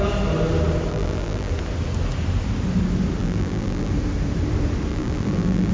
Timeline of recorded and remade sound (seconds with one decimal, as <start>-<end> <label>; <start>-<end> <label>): 0.0-0.9 recorded; 0.9-1.5 remade; 1.5-3.2 recorded; 3.2-3.9 remade; 3.9-4.9 recorded; 4.9-5.7 remade